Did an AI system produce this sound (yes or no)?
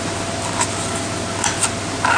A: no